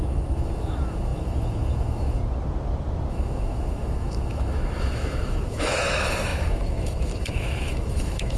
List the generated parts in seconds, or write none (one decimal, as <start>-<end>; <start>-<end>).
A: 0.0-2.2; 3.1-8.4